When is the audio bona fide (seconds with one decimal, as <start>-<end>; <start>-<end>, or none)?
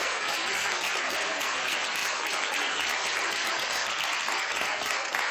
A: none